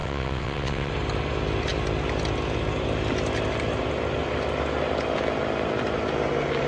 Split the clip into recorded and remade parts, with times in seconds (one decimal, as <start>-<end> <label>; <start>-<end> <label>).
0.0-0.9 remade; 0.9-6.7 recorded